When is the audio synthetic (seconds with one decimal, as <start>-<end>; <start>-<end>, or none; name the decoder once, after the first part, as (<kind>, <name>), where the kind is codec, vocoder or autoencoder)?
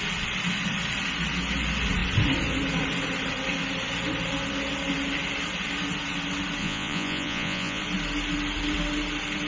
6.6-7.8 (vocoder, Vocos)